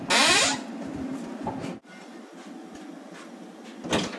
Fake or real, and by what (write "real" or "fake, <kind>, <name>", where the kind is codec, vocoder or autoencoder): real